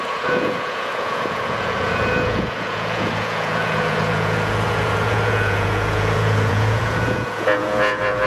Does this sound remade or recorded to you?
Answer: remade